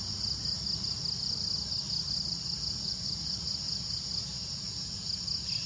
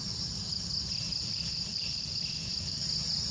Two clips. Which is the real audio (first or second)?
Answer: first